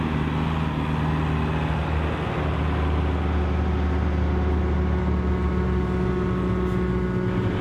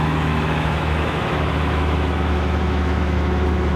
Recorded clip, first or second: first